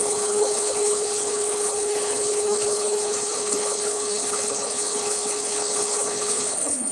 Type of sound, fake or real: fake